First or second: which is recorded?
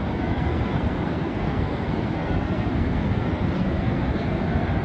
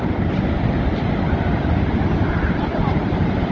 second